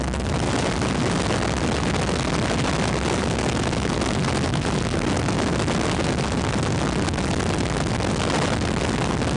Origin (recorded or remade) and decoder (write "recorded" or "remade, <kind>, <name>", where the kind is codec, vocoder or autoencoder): recorded